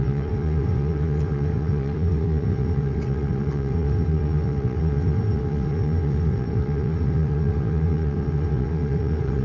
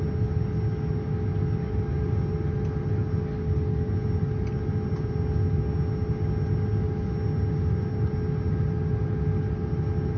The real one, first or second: second